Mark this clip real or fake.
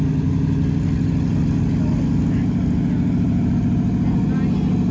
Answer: real